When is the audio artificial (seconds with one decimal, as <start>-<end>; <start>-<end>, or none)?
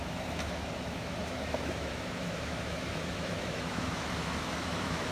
0.0-5.1